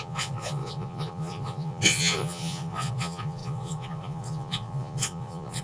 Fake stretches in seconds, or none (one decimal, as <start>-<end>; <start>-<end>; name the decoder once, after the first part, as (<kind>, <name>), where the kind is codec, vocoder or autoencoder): 0.0-5.6 (vocoder, Vocos)